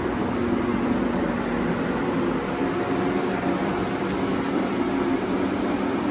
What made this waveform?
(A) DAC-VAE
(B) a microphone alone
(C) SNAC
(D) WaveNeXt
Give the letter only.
B